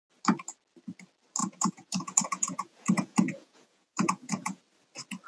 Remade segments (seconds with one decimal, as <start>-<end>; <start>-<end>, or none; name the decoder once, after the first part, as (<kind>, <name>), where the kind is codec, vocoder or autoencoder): 1.4-4.6 (vocoder, Vocos)